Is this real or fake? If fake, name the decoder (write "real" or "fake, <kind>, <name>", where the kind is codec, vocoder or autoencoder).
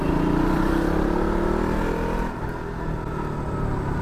real